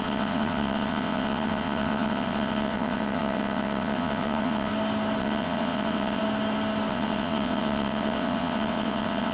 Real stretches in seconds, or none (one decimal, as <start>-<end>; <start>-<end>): 4.7-5.2; 6.2-6.9